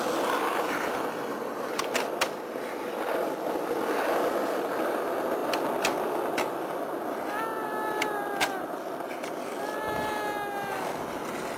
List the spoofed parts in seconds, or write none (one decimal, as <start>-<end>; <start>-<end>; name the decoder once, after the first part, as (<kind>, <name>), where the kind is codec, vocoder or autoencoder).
none